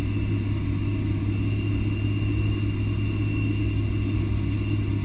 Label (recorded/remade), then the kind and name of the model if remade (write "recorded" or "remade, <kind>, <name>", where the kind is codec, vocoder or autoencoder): recorded